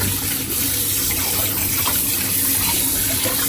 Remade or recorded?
recorded